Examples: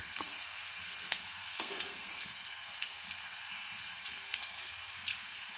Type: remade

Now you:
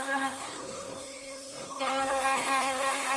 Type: remade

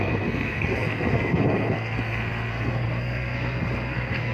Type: remade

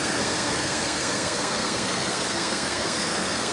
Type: remade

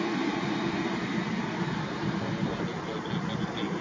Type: recorded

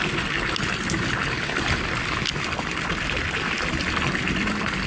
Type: recorded